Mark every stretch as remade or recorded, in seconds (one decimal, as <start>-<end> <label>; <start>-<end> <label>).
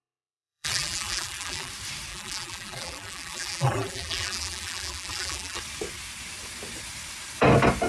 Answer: 0.0-1.7 remade; 1.7-2.1 recorded; 2.1-5.6 remade; 5.6-7.9 recorded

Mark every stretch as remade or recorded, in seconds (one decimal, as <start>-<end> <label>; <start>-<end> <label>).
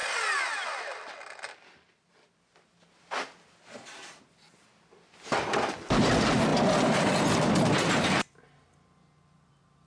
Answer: 0.0-9.9 recorded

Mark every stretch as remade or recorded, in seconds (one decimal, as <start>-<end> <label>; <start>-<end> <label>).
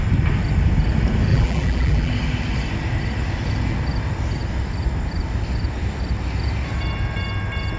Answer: 0.0-1.3 recorded; 1.3-2.1 remade; 2.1-7.8 recorded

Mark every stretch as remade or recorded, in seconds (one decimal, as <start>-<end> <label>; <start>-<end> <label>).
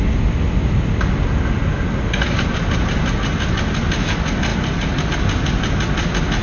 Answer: 0.0-6.4 recorded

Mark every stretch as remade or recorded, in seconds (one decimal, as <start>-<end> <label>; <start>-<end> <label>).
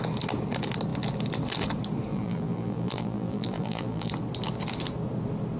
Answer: 0.0-2.1 recorded; 2.1-4.1 remade; 4.1-5.6 recorded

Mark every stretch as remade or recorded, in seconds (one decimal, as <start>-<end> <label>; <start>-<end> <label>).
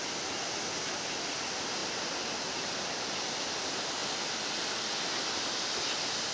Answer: 0.0-4.0 recorded; 4.0-5.4 remade; 5.4-6.3 recorded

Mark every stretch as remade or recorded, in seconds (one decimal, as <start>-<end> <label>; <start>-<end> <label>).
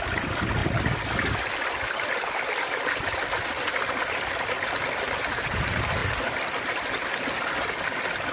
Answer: 0.0-6.0 recorded; 6.0-6.9 remade; 6.9-8.3 recorded